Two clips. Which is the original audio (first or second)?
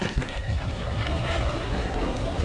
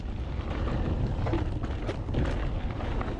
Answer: second